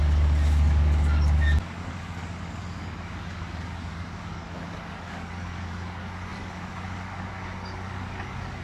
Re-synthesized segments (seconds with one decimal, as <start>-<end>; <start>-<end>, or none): 0.0-8.6

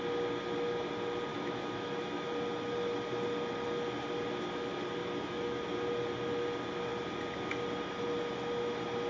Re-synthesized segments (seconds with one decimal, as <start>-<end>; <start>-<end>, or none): 1.3-2.2; 5.0-5.6

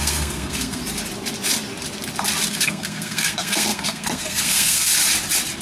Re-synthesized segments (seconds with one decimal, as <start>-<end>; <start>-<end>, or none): 0.0-0.8; 2.5-4.9

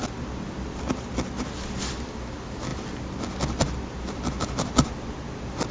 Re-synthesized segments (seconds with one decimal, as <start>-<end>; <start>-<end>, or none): none

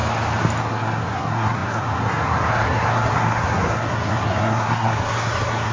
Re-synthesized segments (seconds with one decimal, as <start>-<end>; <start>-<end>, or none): 0.6-5.7

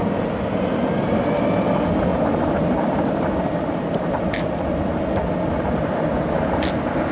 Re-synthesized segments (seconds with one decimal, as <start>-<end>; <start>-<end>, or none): none